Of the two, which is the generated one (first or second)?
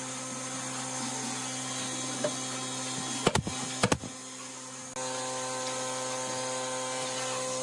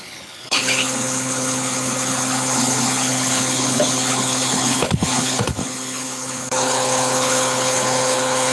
second